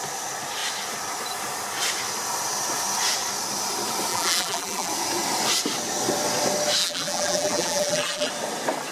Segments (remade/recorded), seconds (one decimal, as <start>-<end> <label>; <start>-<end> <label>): 0.0-4.1 recorded; 4.1-4.9 remade; 4.9-6.8 recorded; 6.8-8.3 remade; 8.3-8.9 recorded